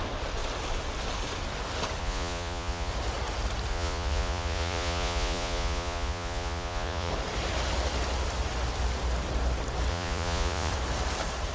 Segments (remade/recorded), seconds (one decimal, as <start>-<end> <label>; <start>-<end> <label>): 0.0-2.0 recorded; 2.0-2.9 remade; 2.9-3.7 recorded; 3.7-7.1 remade; 7.1-9.9 recorded; 9.9-10.7 remade; 10.7-11.5 recorded

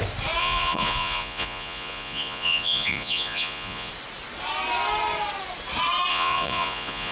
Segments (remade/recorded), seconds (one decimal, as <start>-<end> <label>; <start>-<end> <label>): 0.0-0.4 recorded; 0.4-3.9 remade; 3.9-6.1 recorded; 6.1-7.1 remade